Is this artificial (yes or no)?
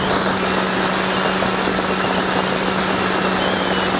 no